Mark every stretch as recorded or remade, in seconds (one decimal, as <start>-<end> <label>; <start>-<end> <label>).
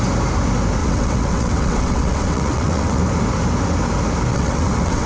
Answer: 0.0-0.8 recorded; 0.8-3.0 remade; 3.0-4.3 recorded; 4.3-5.1 remade